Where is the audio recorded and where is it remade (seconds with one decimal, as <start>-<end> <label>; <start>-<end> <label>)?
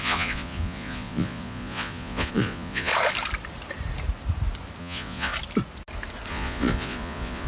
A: 0.0-2.9 remade; 2.9-4.8 recorded; 4.8-5.3 remade; 5.3-6.3 recorded; 6.3-7.5 remade